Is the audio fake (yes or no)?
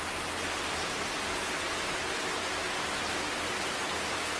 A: no